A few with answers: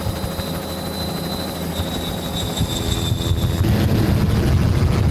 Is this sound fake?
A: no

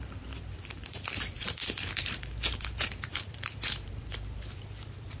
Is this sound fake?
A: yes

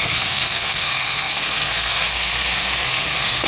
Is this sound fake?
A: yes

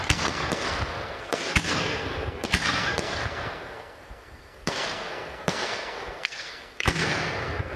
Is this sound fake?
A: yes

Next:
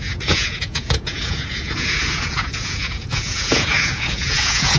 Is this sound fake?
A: yes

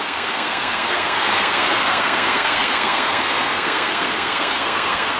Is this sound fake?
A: yes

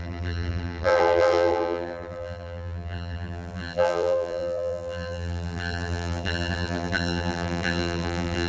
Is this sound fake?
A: yes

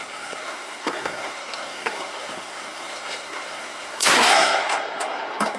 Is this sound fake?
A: yes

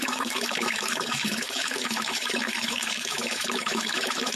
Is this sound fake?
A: yes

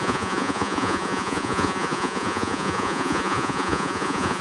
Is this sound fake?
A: yes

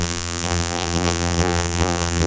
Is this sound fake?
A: yes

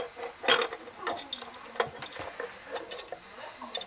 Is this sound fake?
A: no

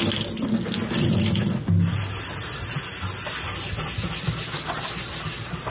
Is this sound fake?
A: no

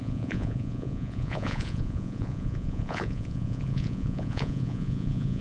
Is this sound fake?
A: yes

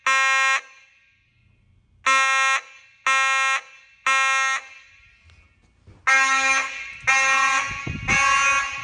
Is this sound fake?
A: no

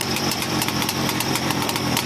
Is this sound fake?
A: yes